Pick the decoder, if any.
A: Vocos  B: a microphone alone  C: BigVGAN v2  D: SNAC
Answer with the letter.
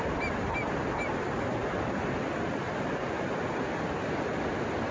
B